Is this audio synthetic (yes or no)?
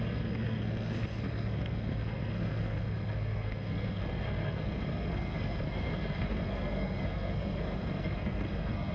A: yes